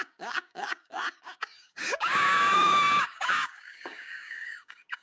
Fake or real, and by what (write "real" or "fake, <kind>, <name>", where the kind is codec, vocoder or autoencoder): fake, codec, DAC